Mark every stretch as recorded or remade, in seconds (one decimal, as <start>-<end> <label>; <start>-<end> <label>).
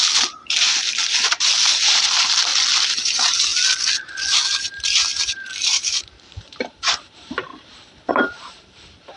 0.0-2.5 remade; 2.5-3.0 recorded; 3.0-3.5 remade; 3.5-4.6 recorded; 4.6-7.5 remade; 7.5-8.1 recorded; 8.1-9.2 remade